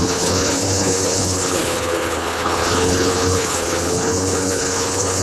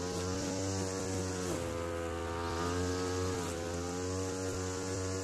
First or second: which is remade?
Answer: first